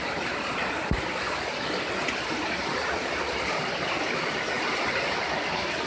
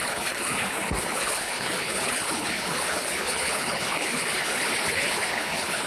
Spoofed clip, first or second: second